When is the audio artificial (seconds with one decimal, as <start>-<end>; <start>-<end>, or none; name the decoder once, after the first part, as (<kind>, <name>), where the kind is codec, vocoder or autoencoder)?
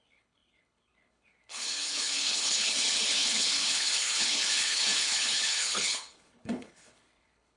0.0-7.6 (codec, HILCodec)